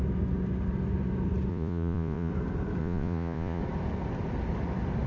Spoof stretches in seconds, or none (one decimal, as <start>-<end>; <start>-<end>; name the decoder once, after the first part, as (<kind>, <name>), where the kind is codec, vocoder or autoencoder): 1.5-2.3 (vocoder, Vocos); 2.8-3.6